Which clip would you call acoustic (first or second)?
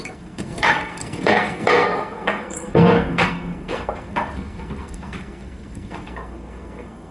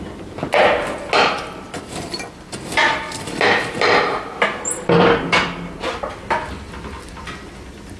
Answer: second